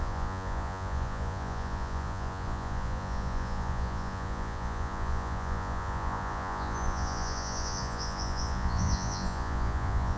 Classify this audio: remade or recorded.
remade